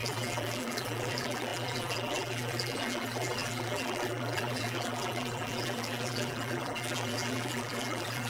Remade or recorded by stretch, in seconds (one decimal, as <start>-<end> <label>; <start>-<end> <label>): 0.0-8.3 remade